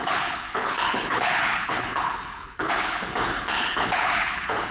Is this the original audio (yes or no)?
no